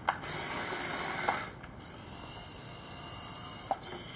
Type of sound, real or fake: real